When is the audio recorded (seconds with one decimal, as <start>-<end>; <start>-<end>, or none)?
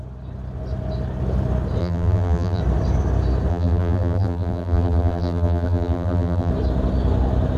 0.0-1.8; 2.6-3.5; 6.5-7.6